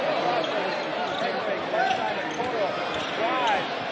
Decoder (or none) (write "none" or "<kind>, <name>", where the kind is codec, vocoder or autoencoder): none